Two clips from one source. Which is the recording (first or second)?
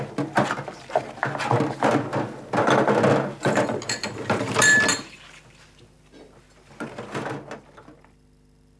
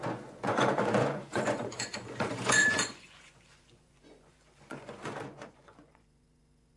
first